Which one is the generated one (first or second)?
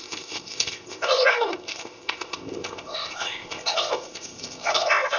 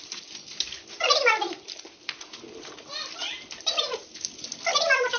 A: first